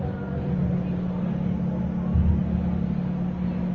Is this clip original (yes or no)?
yes